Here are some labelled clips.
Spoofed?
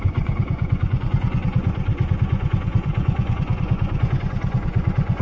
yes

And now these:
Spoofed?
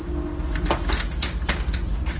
no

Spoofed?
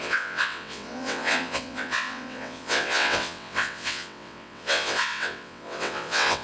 yes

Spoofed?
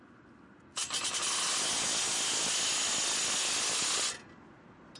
no